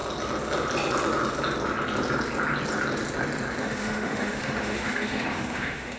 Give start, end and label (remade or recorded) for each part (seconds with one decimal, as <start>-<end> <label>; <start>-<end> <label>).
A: 0.0-3.6 recorded; 3.6-6.0 remade